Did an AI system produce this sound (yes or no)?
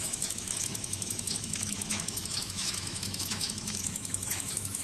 yes